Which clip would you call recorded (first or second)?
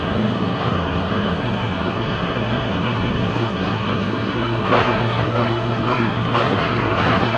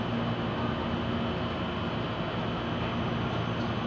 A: second